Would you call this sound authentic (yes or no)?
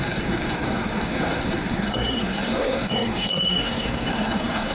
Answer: no